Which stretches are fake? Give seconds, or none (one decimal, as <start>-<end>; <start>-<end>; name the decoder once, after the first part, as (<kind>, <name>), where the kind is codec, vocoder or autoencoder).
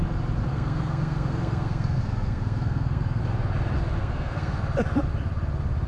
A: 0.5-3.2 (codec, SNAC); 4.0-4.6